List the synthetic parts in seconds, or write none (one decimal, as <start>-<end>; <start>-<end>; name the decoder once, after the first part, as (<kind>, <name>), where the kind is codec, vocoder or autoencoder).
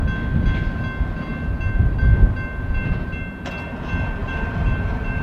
4.2-5.2 (vocoder, BigVGAN v2)